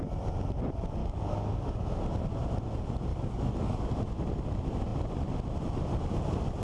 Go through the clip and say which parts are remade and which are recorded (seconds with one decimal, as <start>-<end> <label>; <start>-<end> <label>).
0.0-1.0 recorded; 1.0-2.0 remade; 2.0-3.1 recorded; 3.1-4.0 remade; 4.0-6.6 recorded